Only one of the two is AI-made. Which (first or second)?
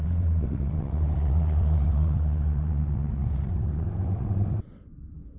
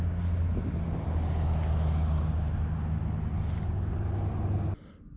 first